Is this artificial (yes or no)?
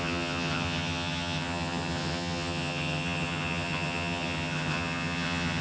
yes